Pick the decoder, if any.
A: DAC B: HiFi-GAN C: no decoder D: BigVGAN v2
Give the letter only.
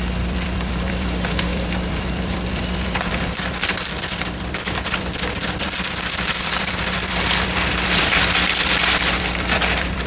D